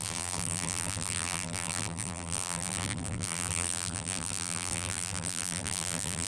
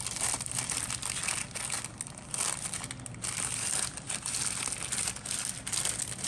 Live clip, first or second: second